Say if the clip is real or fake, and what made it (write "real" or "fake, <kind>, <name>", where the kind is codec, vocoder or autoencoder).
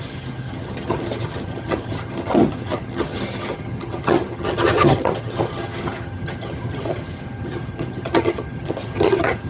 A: fake, vocoder, HiFi-GAN